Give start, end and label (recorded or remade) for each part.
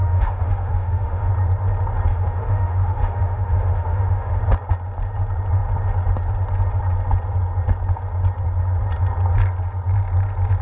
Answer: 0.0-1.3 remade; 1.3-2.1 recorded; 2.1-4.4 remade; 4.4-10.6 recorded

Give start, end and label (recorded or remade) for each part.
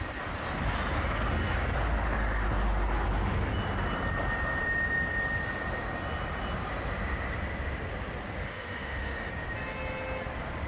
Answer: 0.0-8.4 recorded; 8.4-9.3 remade; 9.3-10.7 recorded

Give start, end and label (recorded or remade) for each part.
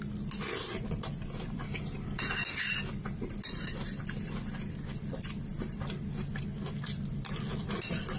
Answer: 0.0-8.2 recorded